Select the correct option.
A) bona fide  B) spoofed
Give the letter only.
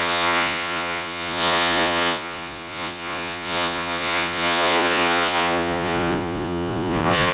B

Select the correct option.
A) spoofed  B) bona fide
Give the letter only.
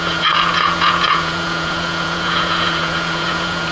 A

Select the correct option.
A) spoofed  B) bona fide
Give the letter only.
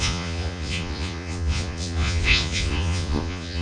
A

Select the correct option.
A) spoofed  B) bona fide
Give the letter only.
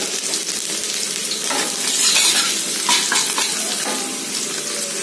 B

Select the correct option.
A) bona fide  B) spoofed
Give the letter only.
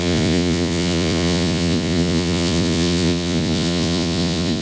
B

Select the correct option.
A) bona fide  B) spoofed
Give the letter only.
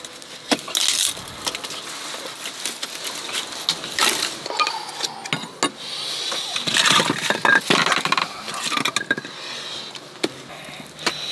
A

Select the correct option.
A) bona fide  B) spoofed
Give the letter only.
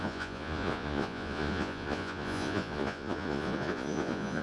B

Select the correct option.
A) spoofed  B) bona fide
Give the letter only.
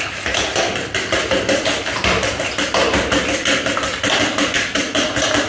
B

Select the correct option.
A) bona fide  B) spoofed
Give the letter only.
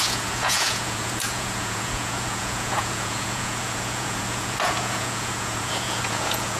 B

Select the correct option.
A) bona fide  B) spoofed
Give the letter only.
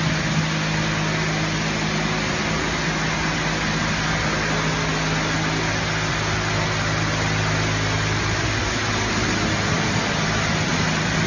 A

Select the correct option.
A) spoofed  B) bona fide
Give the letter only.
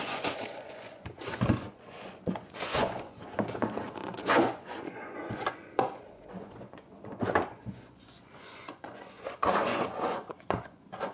A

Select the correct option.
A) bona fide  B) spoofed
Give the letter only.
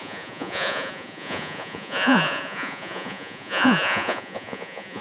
B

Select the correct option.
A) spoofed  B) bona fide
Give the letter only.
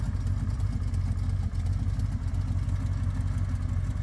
B